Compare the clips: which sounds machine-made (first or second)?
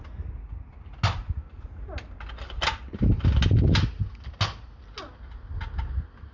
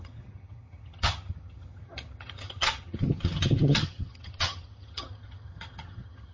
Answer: second